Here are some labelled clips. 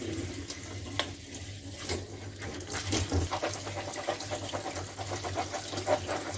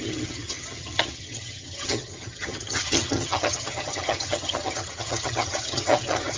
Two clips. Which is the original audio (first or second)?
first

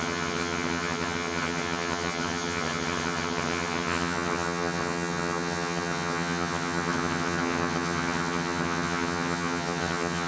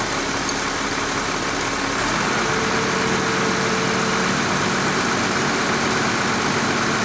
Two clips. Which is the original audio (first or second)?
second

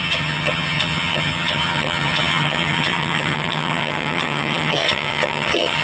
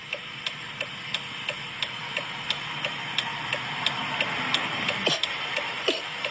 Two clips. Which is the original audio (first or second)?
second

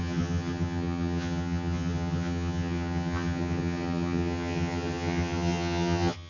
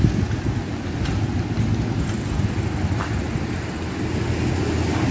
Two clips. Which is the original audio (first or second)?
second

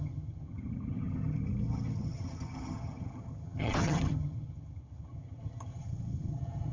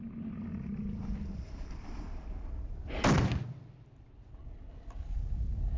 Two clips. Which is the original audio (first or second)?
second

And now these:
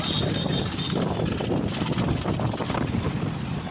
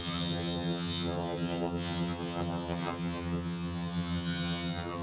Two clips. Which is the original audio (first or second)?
first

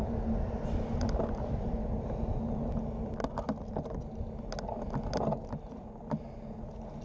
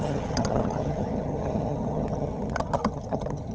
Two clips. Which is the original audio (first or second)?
first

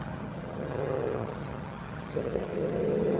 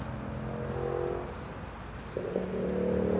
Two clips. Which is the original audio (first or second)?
second